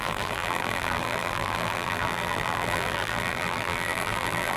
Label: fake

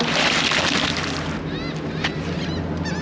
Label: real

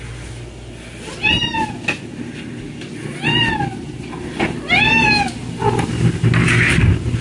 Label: real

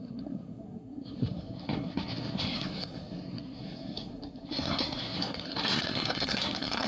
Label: fake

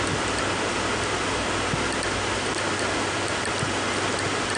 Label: real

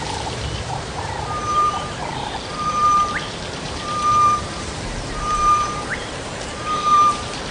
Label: fake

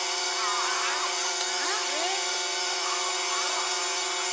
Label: real